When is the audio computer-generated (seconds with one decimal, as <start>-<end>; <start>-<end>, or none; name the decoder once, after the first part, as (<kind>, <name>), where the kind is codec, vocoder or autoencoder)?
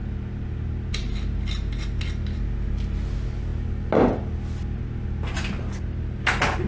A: none